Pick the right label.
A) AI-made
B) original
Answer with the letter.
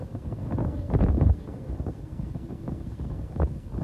A